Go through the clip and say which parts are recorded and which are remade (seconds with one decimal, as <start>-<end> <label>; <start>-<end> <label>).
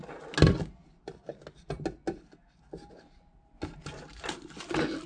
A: 0.0-5.1 recorded